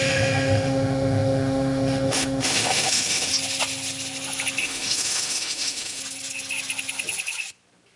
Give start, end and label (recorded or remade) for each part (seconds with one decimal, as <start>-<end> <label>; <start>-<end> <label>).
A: 0.0-3.3 remade; 3.3-4.6 recorded; 4.6-6.0 remade; 6.0-8.0 recorded